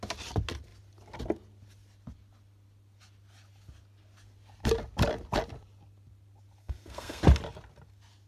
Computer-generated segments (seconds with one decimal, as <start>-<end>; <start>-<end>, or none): 6.6-7.2